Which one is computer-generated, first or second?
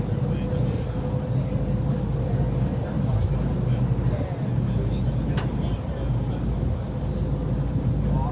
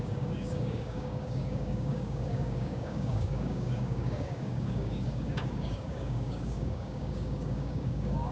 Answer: second